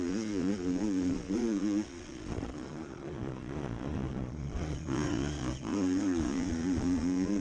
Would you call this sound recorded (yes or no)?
no